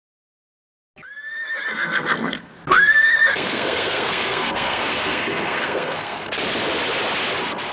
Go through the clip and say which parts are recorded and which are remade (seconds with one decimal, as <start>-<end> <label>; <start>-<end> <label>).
0.0-1.7 recorded; 1.7-6.3 remade; 6.3-7.7 recorded